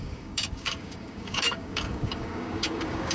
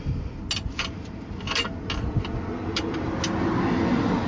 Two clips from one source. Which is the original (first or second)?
second